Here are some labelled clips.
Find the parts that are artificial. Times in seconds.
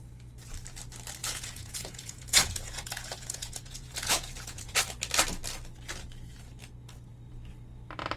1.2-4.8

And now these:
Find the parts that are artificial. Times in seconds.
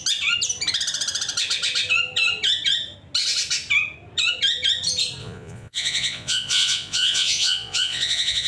5.2-8.5